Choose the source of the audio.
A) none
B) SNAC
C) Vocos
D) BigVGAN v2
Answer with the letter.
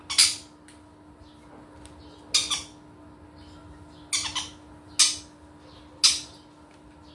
A